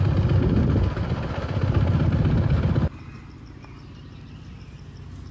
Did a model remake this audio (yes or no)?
no